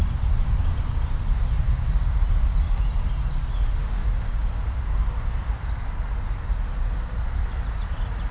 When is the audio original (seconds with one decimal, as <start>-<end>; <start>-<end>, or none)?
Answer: 0.0-3.8; 4.6-8.3